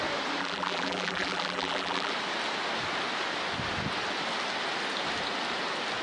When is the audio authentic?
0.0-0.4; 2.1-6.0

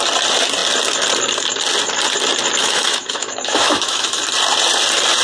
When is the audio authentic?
0.0-2.6; 4.2-5.2